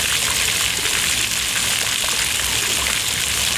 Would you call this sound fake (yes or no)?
no